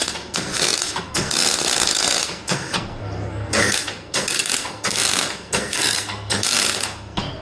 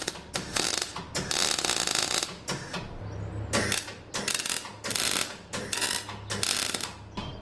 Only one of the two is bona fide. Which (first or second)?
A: second